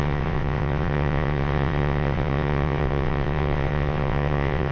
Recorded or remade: remade